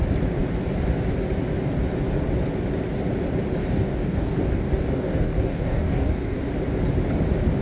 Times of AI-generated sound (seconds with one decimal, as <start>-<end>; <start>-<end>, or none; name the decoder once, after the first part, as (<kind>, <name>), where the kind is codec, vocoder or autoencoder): 3.6-6.4 (codec, DAC)